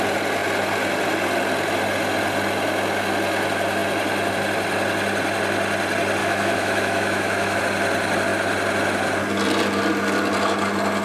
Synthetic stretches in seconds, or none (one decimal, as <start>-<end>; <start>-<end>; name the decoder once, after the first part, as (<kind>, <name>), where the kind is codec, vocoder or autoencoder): 6.2-7.6 (autoencoder, DAC-VAE)